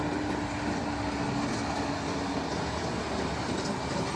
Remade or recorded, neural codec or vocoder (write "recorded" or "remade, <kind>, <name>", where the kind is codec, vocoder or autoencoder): recorded